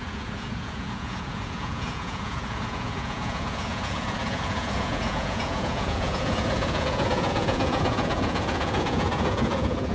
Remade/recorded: remade